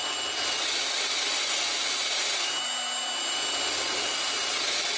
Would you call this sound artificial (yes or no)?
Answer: no